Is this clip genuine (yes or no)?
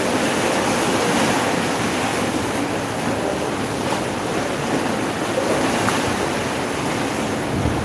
yes